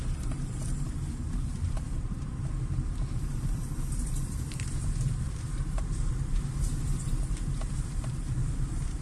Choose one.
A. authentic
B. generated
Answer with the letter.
B